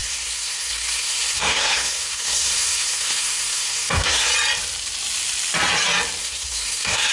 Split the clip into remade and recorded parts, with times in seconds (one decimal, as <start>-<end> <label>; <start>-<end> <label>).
0.0-4.3 remade; 4.3-6.2 recorded; 6.2-7.1 remade